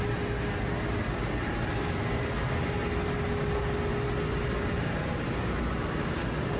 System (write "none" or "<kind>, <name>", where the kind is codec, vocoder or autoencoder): none